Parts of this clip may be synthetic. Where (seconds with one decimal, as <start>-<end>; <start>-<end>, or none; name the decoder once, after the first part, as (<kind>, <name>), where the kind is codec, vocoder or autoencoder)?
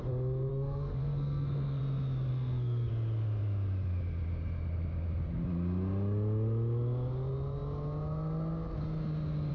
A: 0.5-1.8 (codec, SNAC); 2.3-2.9